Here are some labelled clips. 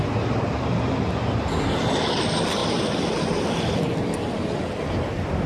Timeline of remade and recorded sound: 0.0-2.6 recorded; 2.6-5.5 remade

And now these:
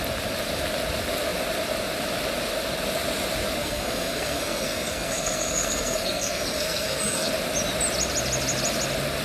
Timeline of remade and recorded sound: 0.0-3.6 recorded; 3.6-7.3 remade; 7.3-9.2 recorded

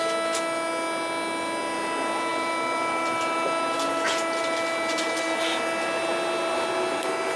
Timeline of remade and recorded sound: 0.0-2.3 recorded; 2.3-5.1 remade; 5.1-7.4 recorded

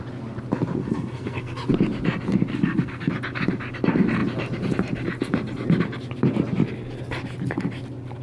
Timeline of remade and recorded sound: 0.0-0.8 recorded; 0.8-1.7 remade; 1.7-2.5 recorded; 2.5-3.1 remade; 3.1-8.2 recorded